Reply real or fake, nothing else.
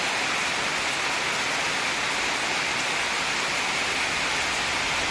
real